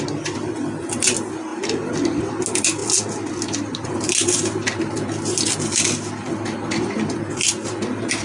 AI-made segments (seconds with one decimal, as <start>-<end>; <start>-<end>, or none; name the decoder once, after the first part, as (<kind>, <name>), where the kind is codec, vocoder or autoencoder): none